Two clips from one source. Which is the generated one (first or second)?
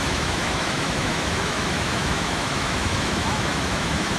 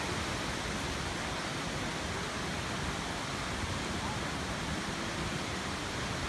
first